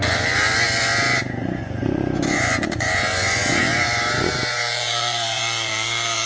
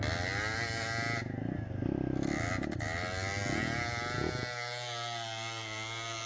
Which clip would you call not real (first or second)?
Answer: first